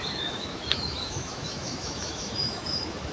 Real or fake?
fake